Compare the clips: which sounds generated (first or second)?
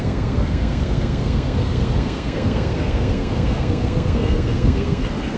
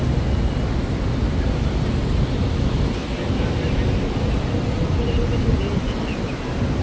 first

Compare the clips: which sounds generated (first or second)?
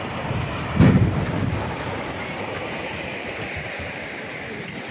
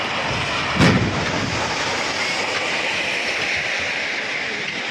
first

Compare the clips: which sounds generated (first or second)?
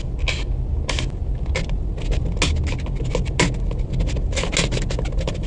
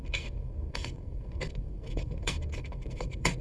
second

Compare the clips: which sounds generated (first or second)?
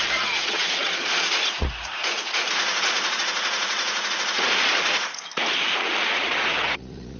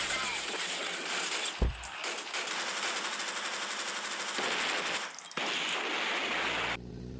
first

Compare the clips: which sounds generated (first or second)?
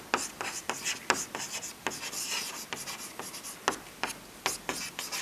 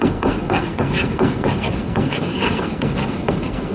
second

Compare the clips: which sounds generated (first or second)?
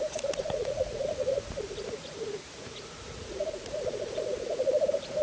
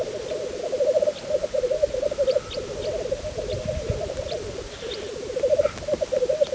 first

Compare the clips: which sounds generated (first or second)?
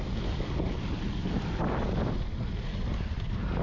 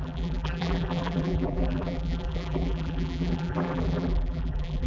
second